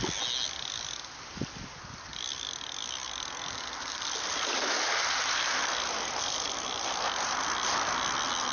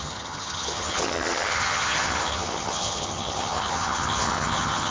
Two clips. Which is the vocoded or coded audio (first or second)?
second